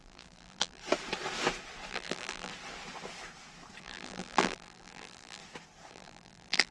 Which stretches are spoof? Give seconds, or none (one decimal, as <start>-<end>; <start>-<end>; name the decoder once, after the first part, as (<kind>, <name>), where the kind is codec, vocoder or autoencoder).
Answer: 0.0-0.8 (vocoder, BigVGAN v2); 1.9-2.5; 3.8-5.4; 5.9-6.7